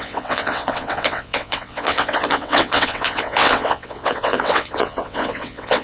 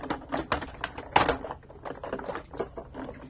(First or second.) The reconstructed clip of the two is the first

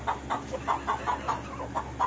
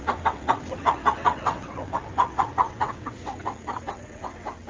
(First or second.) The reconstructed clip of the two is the second